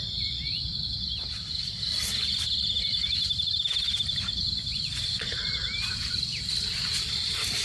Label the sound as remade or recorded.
recorded